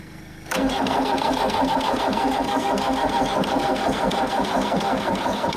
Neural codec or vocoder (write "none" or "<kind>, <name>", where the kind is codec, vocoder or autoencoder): codec, SNAC